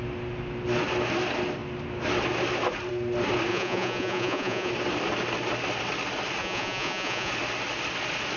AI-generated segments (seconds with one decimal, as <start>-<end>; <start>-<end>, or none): 3.5-4.7; 6.4-7.3